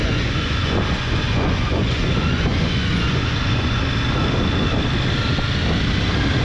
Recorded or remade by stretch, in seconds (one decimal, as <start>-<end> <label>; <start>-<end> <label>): 0.0-3.8 remade; 3.8-6.4 recorded